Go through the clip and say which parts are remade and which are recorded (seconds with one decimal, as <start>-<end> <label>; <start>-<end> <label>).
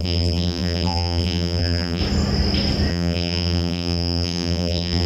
0.0-2.0 remade; 2.0-2.9 recorded; 2.9-5.1 remade